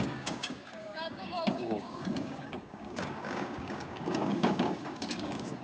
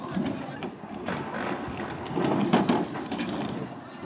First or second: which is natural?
second